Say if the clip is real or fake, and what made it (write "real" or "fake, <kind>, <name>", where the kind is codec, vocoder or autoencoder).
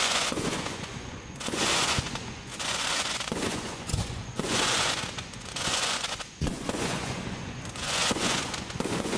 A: fake, vocoder, Vocos